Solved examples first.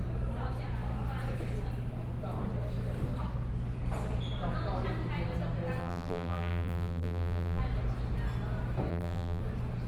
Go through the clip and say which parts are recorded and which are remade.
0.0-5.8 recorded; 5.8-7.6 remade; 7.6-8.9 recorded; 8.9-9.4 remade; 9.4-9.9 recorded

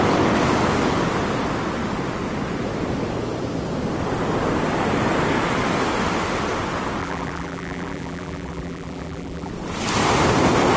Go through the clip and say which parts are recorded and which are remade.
0.0-7.0 recorded; 7.0-9.5 remade; 9.5-10.8 recorded

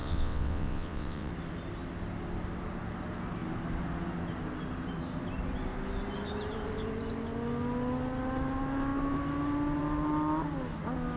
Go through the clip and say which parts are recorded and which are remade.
0.0-1.3 remade; 1.3-11.2 recorded

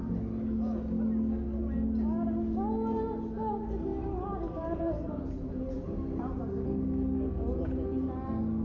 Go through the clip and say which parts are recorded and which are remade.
0.0-3.9 recorded; 3.9-6.4 remade; 6.4-8.6 recorded